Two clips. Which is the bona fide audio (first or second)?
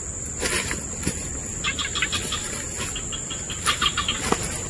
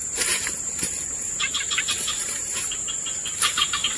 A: first